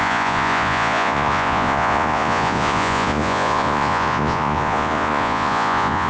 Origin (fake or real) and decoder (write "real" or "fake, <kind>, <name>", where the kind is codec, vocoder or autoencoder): fake, vocoder, Vocos